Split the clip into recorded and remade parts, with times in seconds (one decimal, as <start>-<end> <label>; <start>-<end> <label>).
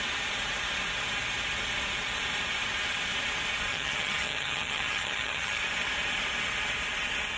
0.0-3.7 recorded; 3.7-5.6 remade; 5.6-7.4 recorded